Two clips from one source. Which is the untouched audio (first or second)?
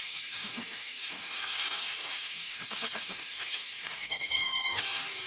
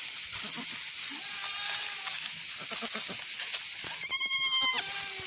second